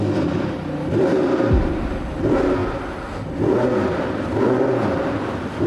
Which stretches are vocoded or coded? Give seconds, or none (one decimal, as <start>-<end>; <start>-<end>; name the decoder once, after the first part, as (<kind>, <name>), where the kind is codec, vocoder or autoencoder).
none